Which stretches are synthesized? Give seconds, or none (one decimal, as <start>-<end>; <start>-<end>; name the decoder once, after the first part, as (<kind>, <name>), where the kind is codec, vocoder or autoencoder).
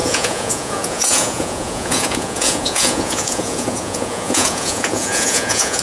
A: 0.0-5.8 (vocoder, Vocos)